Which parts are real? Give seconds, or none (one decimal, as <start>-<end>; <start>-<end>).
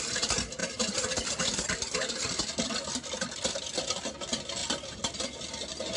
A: 0.0-0.6; 3.8-4.6; 5.1-6.0